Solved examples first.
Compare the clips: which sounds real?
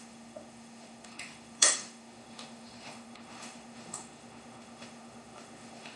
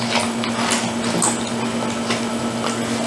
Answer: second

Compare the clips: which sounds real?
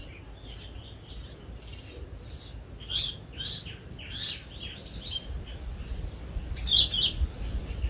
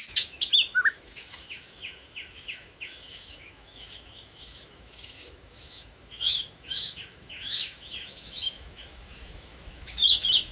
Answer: first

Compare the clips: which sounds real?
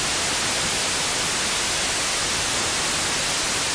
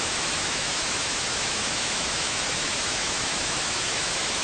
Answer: first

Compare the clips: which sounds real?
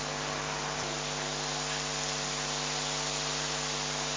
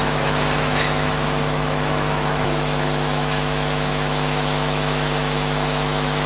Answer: first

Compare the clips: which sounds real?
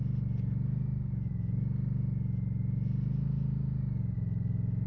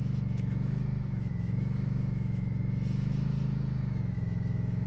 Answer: first